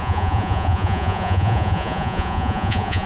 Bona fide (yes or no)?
no